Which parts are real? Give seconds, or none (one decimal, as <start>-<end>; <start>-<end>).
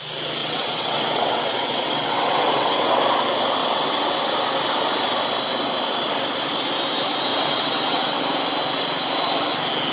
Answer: 0.0-0.4; 3.0-3.6; 4.2-7.3; 8.2-9.9